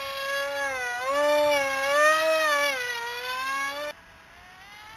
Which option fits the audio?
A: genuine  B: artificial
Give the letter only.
A